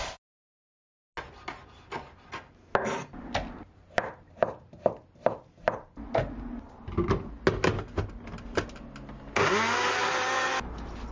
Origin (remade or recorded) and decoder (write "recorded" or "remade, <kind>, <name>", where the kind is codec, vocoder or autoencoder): recorded